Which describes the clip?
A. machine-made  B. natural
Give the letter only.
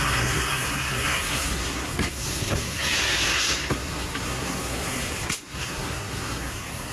A